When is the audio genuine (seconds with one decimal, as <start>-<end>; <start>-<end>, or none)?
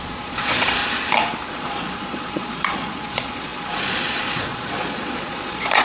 0.8-1.5